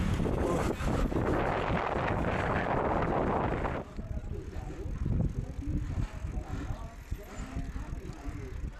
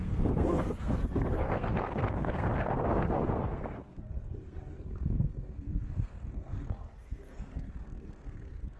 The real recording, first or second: first